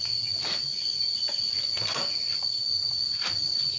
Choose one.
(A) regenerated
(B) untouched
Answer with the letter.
B